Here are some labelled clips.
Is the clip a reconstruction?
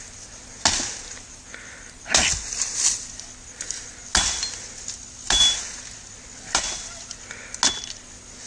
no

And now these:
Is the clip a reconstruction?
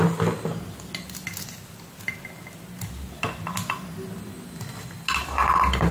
no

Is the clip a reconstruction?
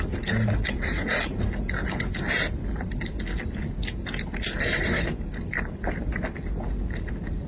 no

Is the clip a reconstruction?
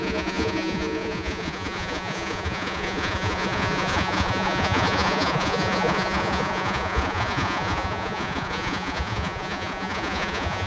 yes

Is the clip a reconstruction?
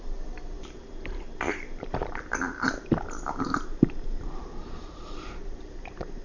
yes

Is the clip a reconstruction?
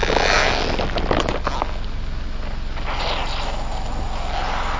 no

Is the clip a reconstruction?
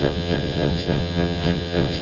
yes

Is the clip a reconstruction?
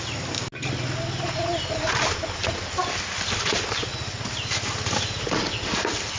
no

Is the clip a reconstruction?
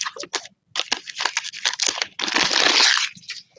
no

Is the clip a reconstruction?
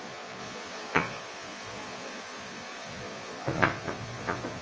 yes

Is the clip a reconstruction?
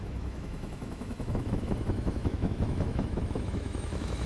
yes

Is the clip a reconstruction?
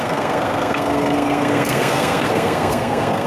yes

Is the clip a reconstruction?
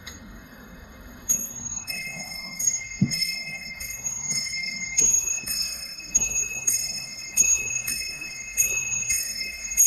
yes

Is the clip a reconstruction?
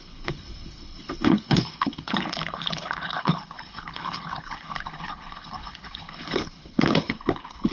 yes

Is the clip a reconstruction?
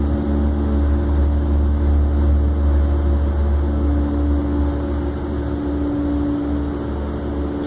no